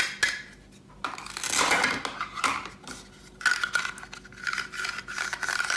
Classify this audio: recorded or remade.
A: recorded